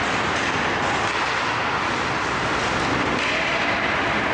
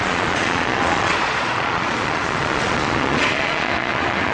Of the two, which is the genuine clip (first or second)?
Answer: first